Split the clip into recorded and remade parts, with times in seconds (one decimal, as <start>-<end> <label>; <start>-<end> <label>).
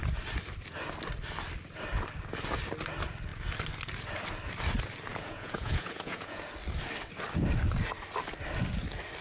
0.0-5.1 recorded; 5.1-6.5 remade; 6.5-9.2 recorded